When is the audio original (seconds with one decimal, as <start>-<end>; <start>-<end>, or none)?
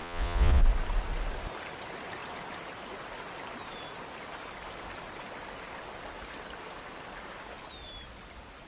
0.6-8.7